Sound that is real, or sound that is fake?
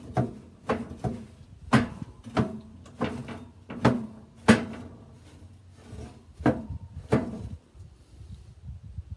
real